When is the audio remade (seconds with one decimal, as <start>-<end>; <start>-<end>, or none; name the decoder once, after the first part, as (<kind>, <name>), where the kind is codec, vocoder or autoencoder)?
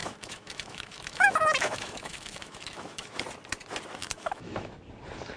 0.0-3.2 (autoencoder, DAC-VAE); 4.0-4.8